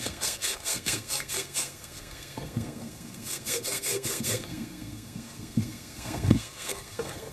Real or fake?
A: fake